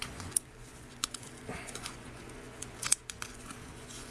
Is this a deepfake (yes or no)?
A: yes